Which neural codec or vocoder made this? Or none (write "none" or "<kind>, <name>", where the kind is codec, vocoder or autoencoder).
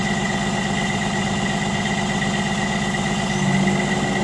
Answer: none